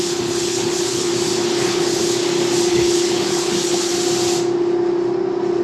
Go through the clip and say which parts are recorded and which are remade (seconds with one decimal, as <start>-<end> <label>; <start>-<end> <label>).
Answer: 0.0-1.1 remade; 1.1-1.6 recorded; 1.6-2.0 remade; 2.0-2.7 recorded; 2.7-3.9 remade; 3.9-5.6 recorded